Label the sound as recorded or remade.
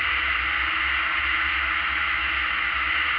recorded